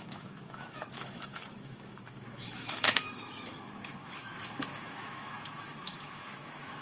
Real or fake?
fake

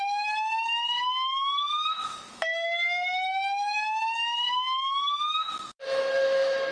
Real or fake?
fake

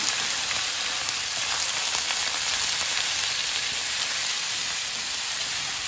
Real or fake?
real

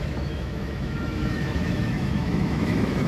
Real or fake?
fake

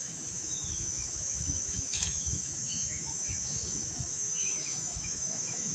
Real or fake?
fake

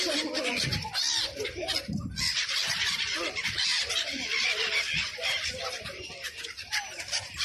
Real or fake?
real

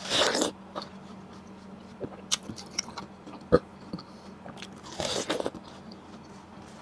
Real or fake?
real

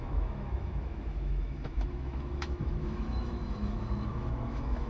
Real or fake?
fake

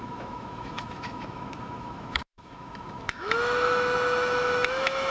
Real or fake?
fake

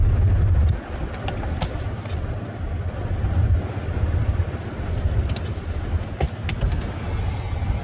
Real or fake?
real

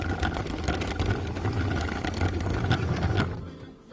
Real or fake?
real